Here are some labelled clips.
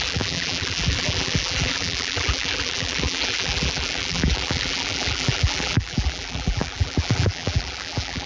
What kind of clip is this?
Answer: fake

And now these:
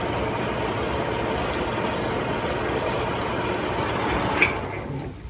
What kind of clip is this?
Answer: real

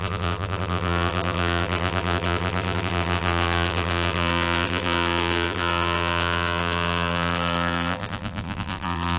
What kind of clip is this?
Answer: fake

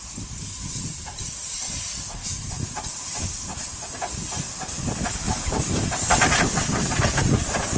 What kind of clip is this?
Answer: fake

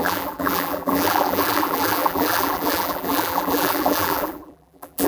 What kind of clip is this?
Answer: fake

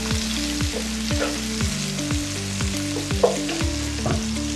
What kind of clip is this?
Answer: real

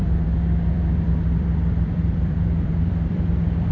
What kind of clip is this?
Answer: fake